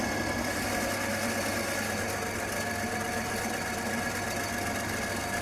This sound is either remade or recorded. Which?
recorded